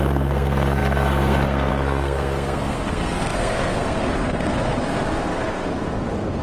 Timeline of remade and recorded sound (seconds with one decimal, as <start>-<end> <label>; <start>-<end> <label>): 0.0-6.4 remade